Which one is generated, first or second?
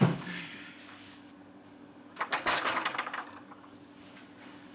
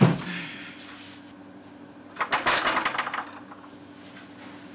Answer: first